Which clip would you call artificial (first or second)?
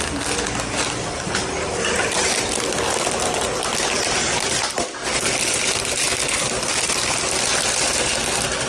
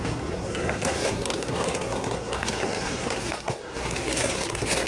second